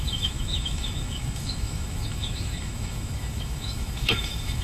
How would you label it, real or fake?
fake